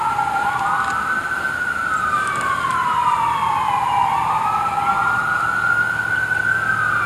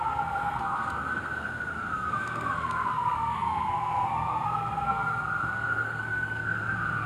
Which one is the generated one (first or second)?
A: second